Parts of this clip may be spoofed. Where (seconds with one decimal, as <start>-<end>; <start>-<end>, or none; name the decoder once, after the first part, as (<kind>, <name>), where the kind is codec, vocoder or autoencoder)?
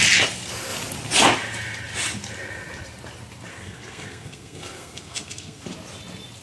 3.5-5.6 (codec, SNAC)